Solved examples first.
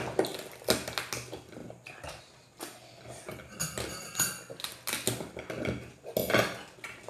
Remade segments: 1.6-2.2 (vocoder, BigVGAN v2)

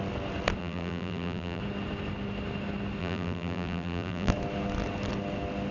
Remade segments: 0.6-1.6 (vocoder, BigVGAN v2); 3.0-4.3

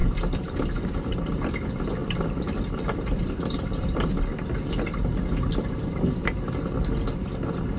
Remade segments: 2.0-4.1 (vocoder, BigVGAN v2)

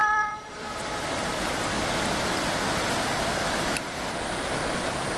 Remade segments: 0.0-2.2 (vocoder, BigVGAN v2)

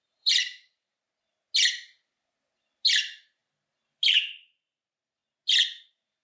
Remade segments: 0.0-1.0 (vocoder, BigVGAN v2); 2.9-3.4; 4.1-5.2; 5.8-6.2

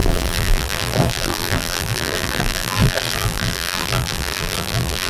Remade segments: 0.0-5.1 (vocoder, BigVGAN v2)

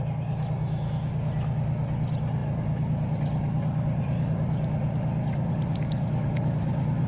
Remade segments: 2.4-7.1 (vocoder, BigVGAN v2)

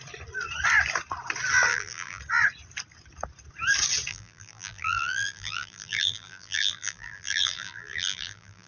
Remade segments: 1.7-2.2 (vocoder, BigVGAN v2); 4.1-8.7